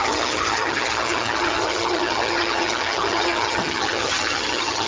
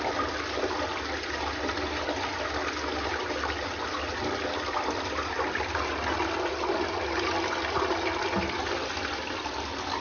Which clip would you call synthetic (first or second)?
first